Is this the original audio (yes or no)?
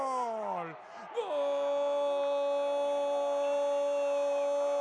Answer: yes